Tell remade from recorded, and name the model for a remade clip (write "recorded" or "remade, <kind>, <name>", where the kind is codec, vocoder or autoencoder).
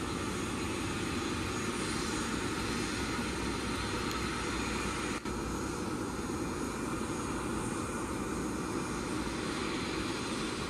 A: recorded